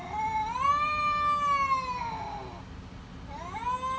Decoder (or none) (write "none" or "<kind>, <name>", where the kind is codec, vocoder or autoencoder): none